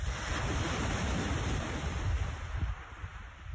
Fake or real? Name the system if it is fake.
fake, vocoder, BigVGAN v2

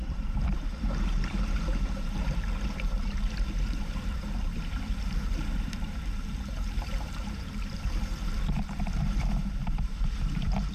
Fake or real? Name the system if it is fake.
fake, vocoder, BigVGAN v2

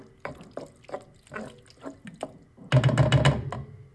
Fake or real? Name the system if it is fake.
real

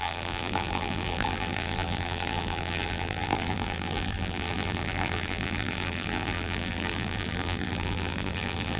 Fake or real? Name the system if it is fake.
fake, vocoder, BigVGAN v2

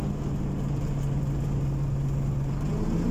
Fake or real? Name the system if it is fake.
real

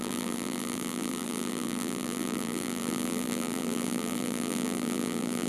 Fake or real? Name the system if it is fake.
fake, vocoder, BigVGAN v2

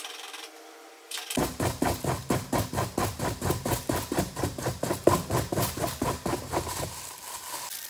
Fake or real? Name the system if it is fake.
real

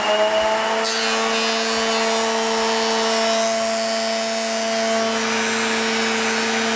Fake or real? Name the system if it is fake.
real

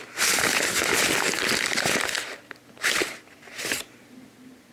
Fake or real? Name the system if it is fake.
real